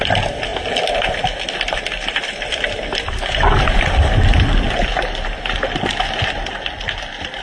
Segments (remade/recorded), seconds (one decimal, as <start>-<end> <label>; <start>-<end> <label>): 0.0-7.4 recorded